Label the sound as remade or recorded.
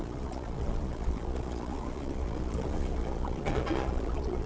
remade